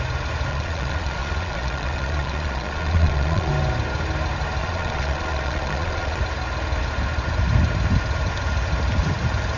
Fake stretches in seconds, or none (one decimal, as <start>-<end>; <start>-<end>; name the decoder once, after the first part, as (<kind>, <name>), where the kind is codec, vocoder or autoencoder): 0.5-3.5 (vocoder, Vocos); 4.6-6.2